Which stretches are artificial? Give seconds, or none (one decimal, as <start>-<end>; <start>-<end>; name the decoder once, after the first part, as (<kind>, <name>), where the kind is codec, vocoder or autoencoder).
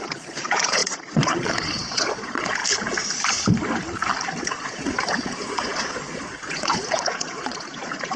0.0-2.6 (vocoder, Vocos); 4.4-8.2